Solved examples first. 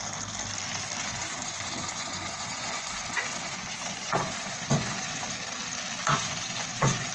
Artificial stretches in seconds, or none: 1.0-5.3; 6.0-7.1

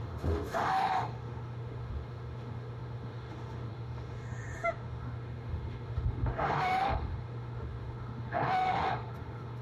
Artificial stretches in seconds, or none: 0.0-9.6

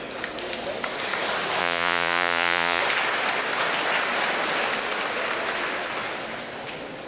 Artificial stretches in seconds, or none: 1.6-2.8

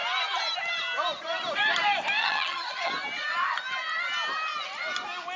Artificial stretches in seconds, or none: 2.2-2.9

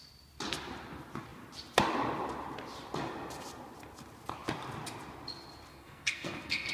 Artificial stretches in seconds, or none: 5.7-6.7

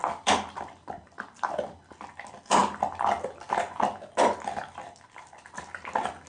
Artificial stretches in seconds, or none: 0.0-0.7

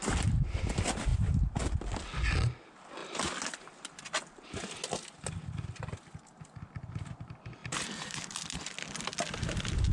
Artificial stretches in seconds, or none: 1.1-1.7; 7.6-8.1